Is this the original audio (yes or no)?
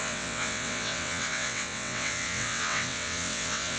no